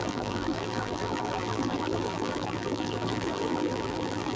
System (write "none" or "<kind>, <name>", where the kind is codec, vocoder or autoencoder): vocoder, BigVGAN v2